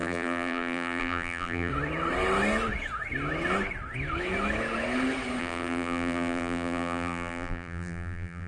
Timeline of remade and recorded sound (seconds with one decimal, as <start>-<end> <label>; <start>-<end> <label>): 0.0-1.7 remade; 1.7-5.4 recorded; 5.4-8.5 remade